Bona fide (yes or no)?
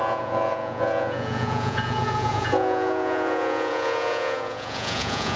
no